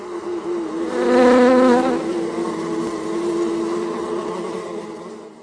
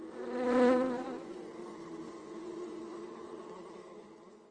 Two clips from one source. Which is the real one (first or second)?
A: first